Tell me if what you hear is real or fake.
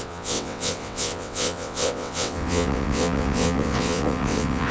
fake